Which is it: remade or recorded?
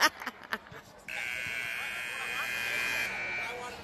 recorded